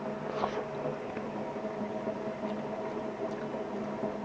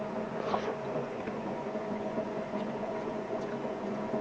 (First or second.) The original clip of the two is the first